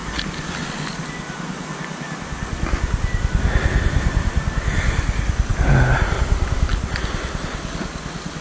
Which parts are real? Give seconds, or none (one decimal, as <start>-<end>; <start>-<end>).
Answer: 0.0-8.4